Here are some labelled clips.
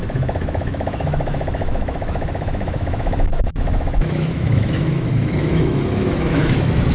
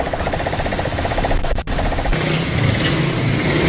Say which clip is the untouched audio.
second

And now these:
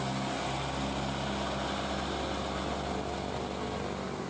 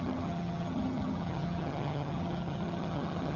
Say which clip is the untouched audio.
first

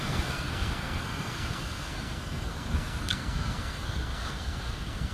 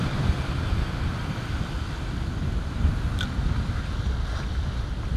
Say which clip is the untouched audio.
second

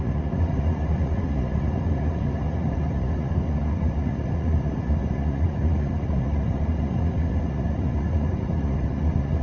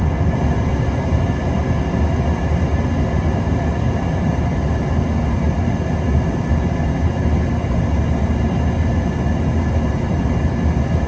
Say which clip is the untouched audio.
second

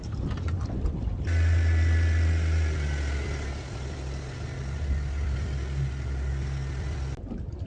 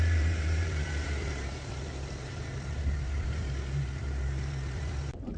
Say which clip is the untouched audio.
first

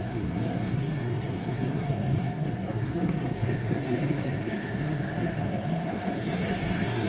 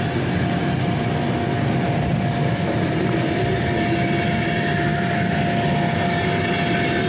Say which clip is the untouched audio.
second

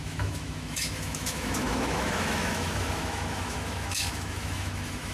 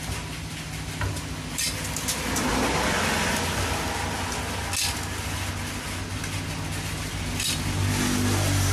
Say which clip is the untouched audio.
second